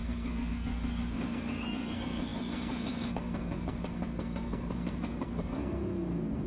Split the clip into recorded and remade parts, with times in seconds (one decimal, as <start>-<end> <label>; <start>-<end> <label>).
0.0-6.5 remade